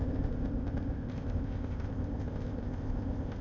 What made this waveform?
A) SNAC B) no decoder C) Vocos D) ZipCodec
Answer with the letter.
D